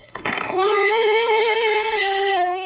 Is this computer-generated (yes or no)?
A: yes